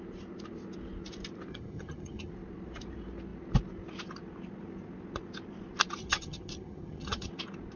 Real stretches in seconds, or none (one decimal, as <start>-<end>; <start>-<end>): 0.0-1.5; 2.3-6.0; 7.3-7.8